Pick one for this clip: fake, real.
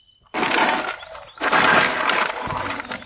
real